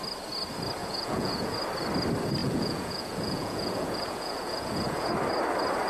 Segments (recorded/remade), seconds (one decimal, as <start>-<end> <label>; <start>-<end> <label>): 0.0-0.8 recorded; 0.8-1.5 remade; 1.5-2.4 recorded; 2.4-5.1 remade; 5.1-5.9 recorded